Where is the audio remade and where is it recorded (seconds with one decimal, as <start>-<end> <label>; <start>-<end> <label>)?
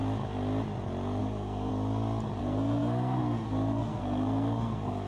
0.0-1.2 recorded; 1.2-1.7 remade; 1.7-2.4 recorded; 2.4-5.1 remade